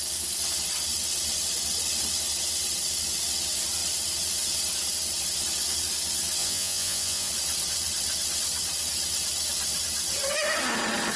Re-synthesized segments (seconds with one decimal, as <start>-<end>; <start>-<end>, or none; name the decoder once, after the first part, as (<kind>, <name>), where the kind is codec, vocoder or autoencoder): 6.4-7.3 (vocoder, Vocos)